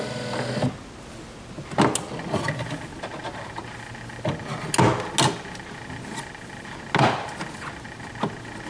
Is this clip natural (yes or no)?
yes